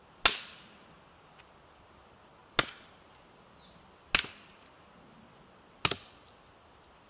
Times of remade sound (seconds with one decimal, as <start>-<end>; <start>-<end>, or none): none